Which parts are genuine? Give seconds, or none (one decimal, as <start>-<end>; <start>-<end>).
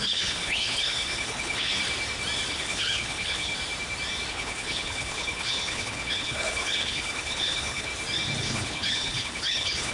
1.8-2.5; 3.5-4.3; 7.9-8.4